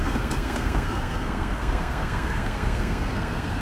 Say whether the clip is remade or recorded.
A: remade